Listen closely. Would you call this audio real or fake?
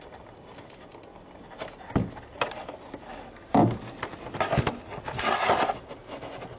real